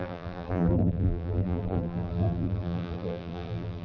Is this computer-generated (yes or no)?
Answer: yes